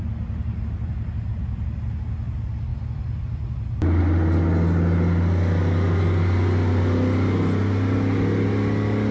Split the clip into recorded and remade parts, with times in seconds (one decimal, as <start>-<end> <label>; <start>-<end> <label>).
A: 0.0-9.1 recorded